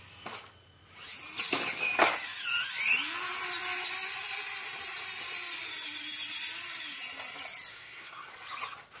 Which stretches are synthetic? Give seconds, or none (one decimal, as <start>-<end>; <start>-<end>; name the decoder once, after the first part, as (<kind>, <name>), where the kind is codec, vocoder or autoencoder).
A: 7.7-8.3 (codec, SNAC)